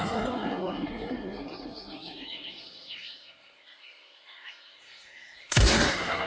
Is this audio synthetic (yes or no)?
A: yes